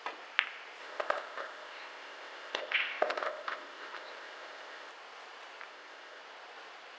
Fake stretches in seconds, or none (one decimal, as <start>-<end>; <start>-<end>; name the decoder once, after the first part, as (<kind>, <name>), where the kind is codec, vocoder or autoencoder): 0.8-4.9 (codec, ZipCodec); 5.7-6.2